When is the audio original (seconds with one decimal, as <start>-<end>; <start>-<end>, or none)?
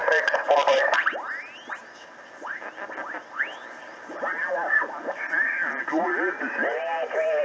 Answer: 0.8-3.0; 4.9-5.6